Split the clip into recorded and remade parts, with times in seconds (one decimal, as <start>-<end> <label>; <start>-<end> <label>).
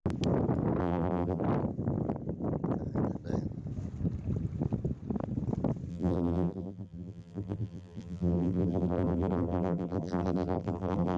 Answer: 0.0-0.8 recorded; 0.8-1.4 remade; 1.4-5.9 recorded; 5.9-11.2 remade